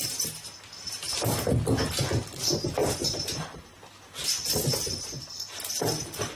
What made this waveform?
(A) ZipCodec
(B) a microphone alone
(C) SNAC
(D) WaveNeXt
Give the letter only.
B